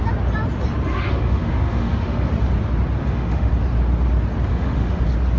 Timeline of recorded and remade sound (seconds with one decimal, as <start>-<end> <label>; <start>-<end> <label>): 0.0-0.9 recorded; 0.9-2.3 remade; 2.3-3.0 recorded; 3.0-3.5 remade; 3.5-4.5 recorded; 4.5-5.0 remade; 5.0-5.4 recorded